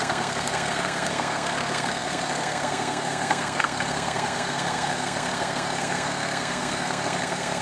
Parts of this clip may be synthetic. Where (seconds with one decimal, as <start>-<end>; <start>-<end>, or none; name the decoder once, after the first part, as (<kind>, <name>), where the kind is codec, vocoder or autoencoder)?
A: 0.0-7.6 (codec, SNAC)